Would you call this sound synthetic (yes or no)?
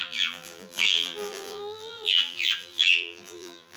yes